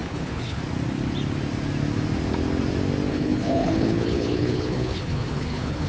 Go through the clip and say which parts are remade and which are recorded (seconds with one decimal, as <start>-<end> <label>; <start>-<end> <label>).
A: 0.0-0.6 remade; 0.6-3.1 recorded; 3.1-5.9 remade